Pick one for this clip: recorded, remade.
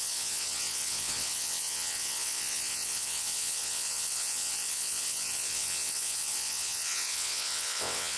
remade